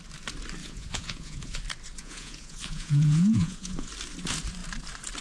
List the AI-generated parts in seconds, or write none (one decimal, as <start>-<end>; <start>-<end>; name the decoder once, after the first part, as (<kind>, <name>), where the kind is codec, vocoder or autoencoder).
0.6-1.6 (vocoder, Vocos); 2.0-3.9

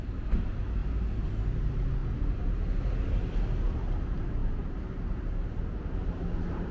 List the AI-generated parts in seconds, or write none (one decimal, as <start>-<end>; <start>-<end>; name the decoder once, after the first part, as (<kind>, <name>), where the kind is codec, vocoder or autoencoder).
none

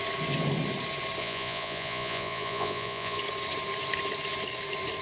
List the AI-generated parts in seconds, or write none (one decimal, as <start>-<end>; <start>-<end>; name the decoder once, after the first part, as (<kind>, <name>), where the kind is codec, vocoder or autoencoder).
1.2-3.2 (vocoder, Vocos)